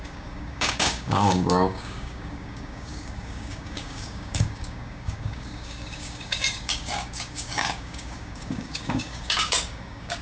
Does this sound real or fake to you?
fake